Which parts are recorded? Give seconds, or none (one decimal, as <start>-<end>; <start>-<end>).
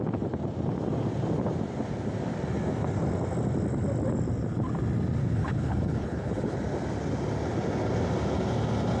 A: 0.0-5.2; 6.6-9.0